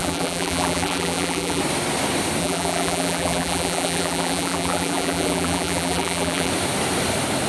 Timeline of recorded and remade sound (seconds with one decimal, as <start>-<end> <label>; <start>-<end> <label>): 0.0-1.6 remade; 1.6-2.4 recorded; 2.4-6.5 remade; 6.5-7.5 recorded